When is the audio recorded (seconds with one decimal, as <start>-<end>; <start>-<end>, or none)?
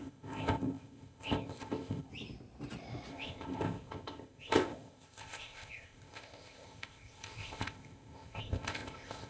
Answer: 2.1-3.1